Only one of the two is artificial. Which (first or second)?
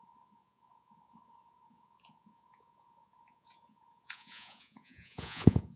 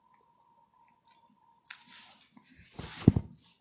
first